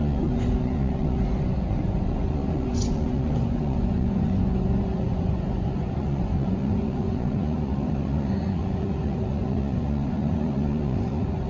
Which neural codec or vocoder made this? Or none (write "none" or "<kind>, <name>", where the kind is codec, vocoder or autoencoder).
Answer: vocoder, Vocos